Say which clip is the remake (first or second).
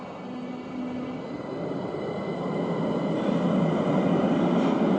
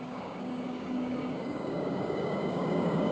second